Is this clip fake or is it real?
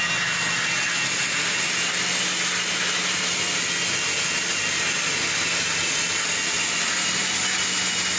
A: real